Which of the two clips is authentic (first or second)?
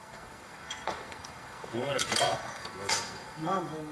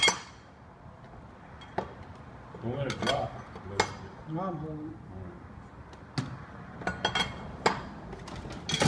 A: second